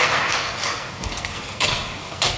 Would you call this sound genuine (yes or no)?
no